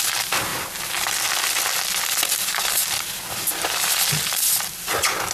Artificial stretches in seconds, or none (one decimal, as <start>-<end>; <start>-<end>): none